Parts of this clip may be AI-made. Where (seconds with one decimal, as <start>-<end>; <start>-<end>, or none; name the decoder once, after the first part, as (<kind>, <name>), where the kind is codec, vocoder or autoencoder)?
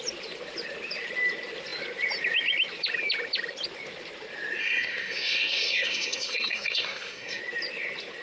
4.6-7.4 (codec, SNAC)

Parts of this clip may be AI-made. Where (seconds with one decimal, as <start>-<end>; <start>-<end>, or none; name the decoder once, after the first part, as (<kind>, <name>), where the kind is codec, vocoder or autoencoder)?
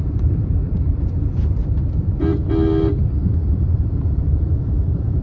0.0-1.6 (vocoder, BigVGAN v2); 3.3-5.2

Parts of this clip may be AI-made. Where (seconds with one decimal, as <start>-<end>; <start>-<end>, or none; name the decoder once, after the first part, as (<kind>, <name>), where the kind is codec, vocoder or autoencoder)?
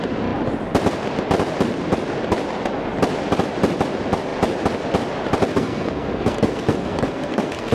5.5-7.7 (codec, SNAC)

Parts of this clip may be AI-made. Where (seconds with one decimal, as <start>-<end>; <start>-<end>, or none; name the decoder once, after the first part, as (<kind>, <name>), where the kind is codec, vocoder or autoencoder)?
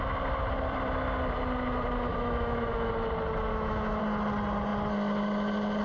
2.1-2.9 (autoencoder, DAC-VAE); 3.5-4.0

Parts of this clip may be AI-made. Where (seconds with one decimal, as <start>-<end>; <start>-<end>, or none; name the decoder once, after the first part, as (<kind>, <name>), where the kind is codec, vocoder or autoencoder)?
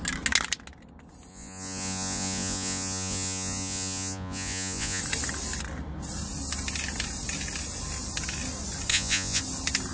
1.3-5.0 (vocoder, Vocos); 8.9-9.4